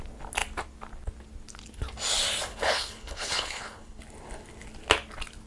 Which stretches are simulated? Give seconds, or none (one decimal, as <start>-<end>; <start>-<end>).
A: 2.5-4.0